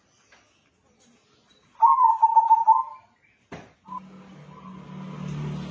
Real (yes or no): yes